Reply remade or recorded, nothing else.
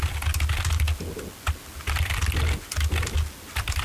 recorded